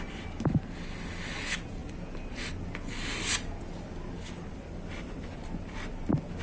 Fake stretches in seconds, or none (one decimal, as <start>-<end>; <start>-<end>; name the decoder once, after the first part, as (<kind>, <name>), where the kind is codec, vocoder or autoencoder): none

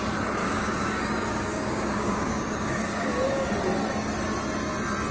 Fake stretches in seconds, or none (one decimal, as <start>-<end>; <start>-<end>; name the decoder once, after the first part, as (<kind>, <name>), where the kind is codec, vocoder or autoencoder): 0.4-3.5 (codec, DAC)